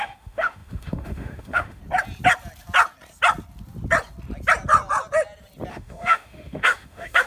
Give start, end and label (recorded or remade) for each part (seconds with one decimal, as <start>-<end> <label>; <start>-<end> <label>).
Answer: 0.0-1.8 remade; 1.8-5.7 recorded; 5.7-7.3 remade